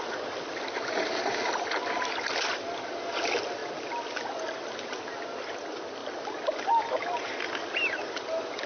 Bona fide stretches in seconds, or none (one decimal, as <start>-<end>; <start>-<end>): 0.0-8.7